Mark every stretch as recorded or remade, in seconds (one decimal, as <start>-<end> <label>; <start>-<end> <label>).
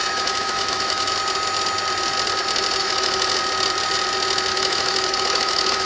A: 0.0-1.1 remade; 1.1-2.8 recorded; 2.8-3.3 remade; 3.3-4.5 recorded; 4.5-5.9 remade